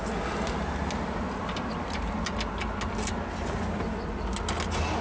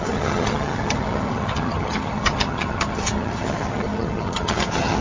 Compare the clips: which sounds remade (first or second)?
second